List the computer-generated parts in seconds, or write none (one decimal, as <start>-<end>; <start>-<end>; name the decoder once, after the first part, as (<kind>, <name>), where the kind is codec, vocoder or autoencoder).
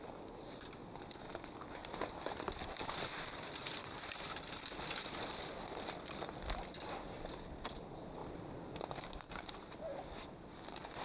1.8-6.9 (vocoder, BigVGAN v2); 8.2-8.8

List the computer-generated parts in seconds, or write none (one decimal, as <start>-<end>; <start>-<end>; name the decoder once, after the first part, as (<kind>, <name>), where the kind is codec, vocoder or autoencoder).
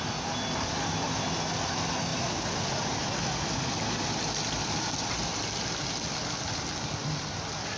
none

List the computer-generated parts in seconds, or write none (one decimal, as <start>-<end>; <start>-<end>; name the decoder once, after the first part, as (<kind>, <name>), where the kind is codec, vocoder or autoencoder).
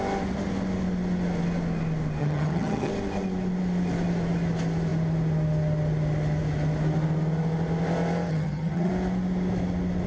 2.2-2.9 (vocoder, HiFi-GAN); 8.3-8.9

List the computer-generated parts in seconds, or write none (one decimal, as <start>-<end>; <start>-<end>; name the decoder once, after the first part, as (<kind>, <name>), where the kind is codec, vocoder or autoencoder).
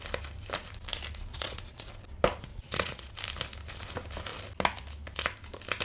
1.3-1.9 (vocoder, Vocos); 2.5-3.1